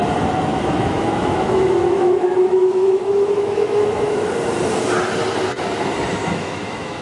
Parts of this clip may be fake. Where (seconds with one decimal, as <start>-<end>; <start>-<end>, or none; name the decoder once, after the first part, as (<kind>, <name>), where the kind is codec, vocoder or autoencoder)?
0.5-4.3 (autoencoder, DAC-VAE); 6.2-7.0